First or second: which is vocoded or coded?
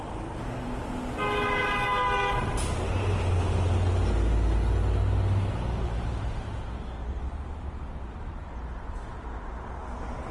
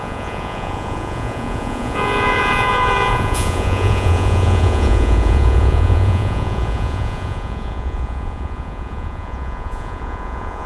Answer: second